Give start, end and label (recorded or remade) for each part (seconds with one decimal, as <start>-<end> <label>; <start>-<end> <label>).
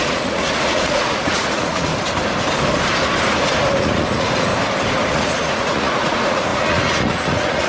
0.0-1.9 remade; 1.9-3.8 recorded; 3.8-4.5 remade; 4.5-5.1 recorded; 5.1-7.7 remade